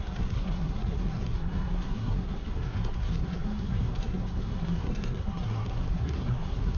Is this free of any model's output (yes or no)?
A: no